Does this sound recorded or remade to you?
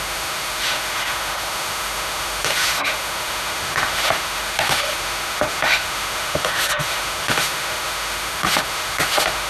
remade